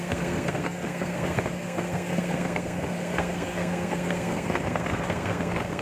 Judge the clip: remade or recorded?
remade